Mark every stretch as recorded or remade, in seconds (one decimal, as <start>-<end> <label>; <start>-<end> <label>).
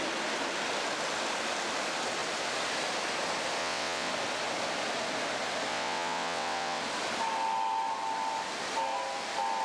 0.0-3.6 recorded; 3.6-4.1 remade; 4.1-5.7 recorded; 5.7-6.8 remade; 6.8-9.6 recorded